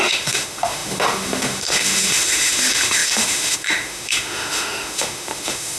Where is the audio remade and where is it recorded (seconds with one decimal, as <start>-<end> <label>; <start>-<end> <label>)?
0.0-5.8 remade